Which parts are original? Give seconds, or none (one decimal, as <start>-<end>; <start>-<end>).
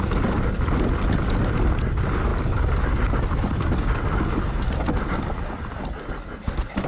0.0-6.9